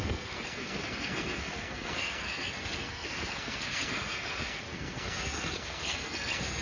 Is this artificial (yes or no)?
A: yes